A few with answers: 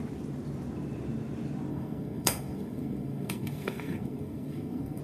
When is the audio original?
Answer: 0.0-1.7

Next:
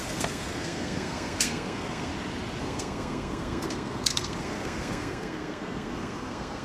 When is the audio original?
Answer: 2.1-2.6

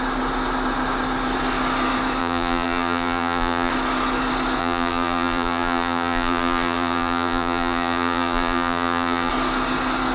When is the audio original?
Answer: 0.0-2.2; 3.7-4.6; 9.3-10.1